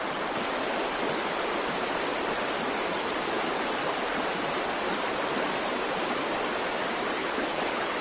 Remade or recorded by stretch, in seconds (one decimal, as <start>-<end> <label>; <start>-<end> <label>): 0.0-7.2 recorded; 7.2-8.0 remade